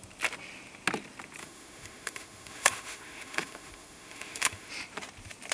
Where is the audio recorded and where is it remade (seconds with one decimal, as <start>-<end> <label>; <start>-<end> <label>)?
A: 0.0-1.4 recorded; 1.4-4.7 remade; 4.7-5.5 recorded